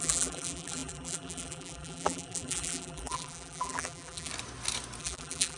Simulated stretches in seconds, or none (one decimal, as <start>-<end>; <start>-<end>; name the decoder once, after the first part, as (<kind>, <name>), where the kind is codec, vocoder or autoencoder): 0.0-4.3 (vocoder, BigVGAN v2); 5.0-5.6